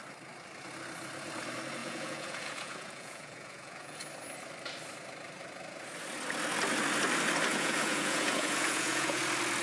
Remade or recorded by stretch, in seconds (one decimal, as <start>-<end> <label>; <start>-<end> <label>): 0.0-1.8 recorded; 1.8-4.0 remade; 4.0-7.5 recorded; 7.5-9.2 remade; 9.2-9.6 recorded